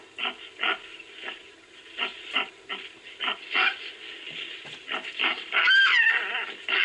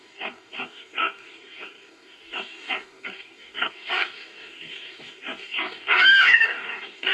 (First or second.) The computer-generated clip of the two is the second